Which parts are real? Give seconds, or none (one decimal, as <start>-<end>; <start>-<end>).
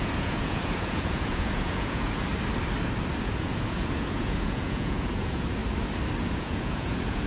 2.3-3.2; 5.6-6.2